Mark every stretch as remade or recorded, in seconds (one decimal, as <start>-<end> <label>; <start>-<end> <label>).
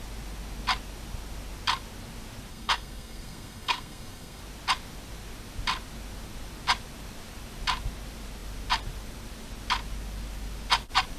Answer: 0.0-2.5 recorded; 2.5-4.4 remade; 4.4-11.2 recorded